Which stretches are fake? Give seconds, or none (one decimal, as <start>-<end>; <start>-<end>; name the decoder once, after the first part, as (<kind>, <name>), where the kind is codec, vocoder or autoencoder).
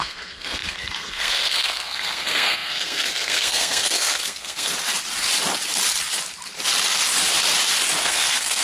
0.0-4.7 (codec, SNAC); 8.0-8.6